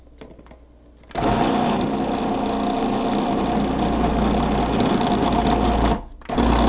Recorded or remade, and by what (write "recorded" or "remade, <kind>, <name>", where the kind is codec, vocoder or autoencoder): recorded